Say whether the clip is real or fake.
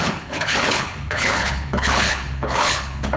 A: fake